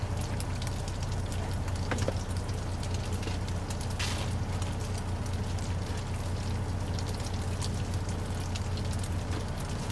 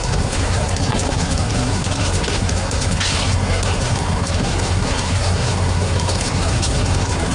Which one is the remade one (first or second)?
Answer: second